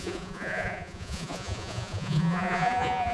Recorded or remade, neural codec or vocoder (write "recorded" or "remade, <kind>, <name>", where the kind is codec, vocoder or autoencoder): remade, vocoder, Vocos